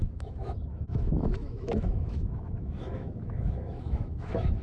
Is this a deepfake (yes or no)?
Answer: yes